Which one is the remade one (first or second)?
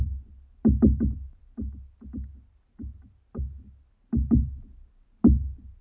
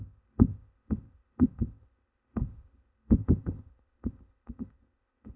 second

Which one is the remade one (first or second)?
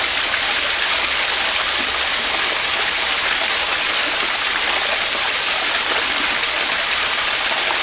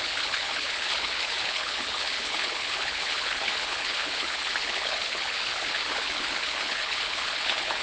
second